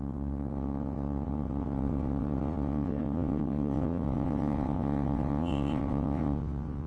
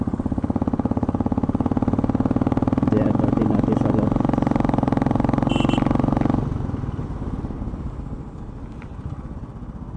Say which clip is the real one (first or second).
second